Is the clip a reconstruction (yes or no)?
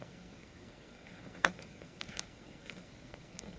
yes